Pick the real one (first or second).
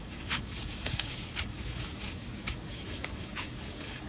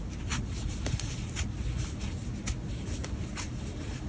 second